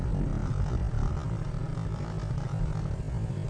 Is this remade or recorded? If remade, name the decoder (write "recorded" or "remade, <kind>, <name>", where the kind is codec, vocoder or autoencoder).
recorded